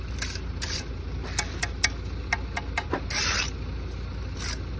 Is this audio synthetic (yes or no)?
no